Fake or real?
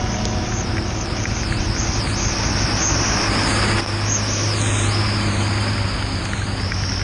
real